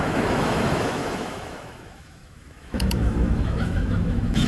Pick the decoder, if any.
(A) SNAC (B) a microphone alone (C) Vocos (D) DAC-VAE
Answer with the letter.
D